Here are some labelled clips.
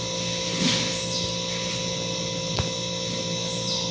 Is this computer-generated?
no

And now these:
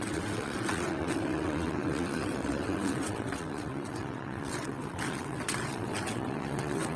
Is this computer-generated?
yes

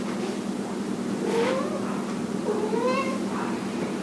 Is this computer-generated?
no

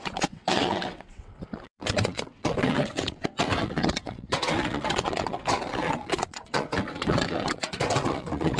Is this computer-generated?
yes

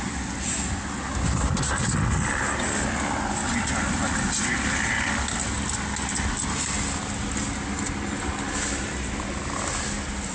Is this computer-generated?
no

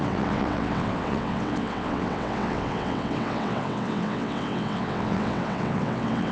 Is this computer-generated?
yes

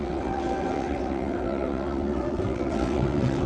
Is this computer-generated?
yes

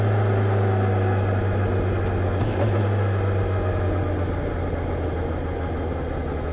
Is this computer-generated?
no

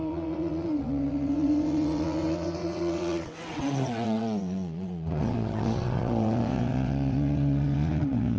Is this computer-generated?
yes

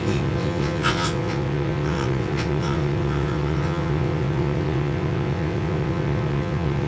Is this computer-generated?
yes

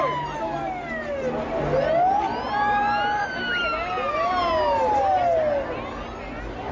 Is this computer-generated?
no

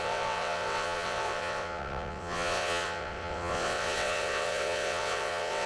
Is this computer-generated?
yes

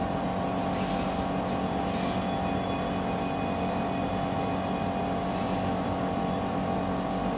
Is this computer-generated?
no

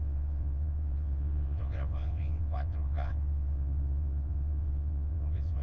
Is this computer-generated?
yes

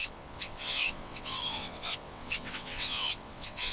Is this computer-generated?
yes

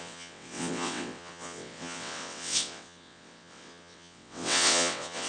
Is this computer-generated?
yes